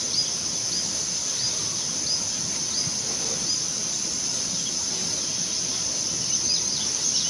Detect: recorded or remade recorded